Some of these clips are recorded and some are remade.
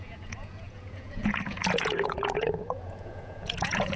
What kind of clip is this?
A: remade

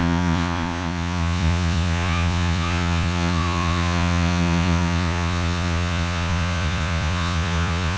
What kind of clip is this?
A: remade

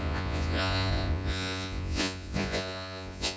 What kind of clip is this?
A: remade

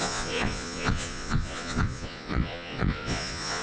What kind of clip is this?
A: remade